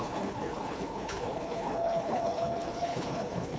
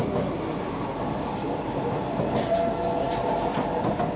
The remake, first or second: first